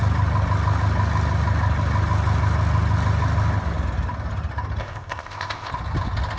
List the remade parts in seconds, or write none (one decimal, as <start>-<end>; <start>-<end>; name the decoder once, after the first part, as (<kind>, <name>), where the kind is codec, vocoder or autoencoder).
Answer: 4.8-5.7 (codec, ZipCodec)